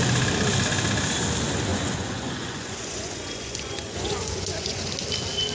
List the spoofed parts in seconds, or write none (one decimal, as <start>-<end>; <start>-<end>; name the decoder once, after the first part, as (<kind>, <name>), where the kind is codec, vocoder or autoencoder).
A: 1.7-4.9 (vocoder, Vocos)